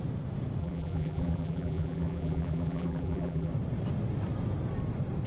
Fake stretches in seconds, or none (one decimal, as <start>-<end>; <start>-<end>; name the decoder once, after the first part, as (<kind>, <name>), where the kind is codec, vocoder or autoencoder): 0.6-3.5 (vocoder, BigVGAN v2)